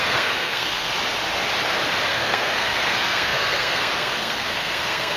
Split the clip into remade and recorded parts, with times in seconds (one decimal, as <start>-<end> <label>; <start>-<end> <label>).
0.0-0.9 remade; 0.9-2.1 recorded; 2.1-5.2 remade

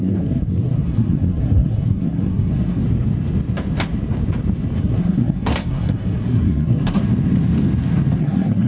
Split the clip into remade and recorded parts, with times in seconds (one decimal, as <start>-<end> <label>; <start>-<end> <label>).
0.0-2.8 remade; 2.8-4.8 recorded; 4.8-7.0 remade; 7.0-8.2 recorded; 8.2-8.7 remade

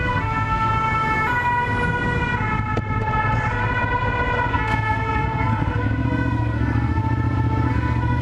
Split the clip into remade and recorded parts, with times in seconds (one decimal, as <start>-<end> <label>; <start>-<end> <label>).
0.0-0.7 remade; 0.7-4.5 recorded; 4.5-7.0 remade; 7.0-7.7 recorded; 7.7-8.2 remade